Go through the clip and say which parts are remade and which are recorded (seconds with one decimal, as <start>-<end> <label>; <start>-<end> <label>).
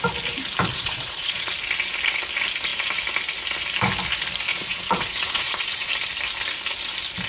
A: 0.0-0.7 recorded; 0.7-1.5 remade; 1.5-4.5 recorded; 4.5-5.9 remade; 5.9-7.3 recorded